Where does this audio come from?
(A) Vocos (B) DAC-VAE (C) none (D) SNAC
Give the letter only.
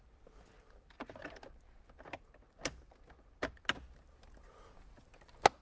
C